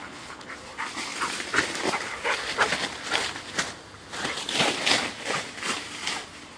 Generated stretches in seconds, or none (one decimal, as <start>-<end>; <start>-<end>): 0.0-0.5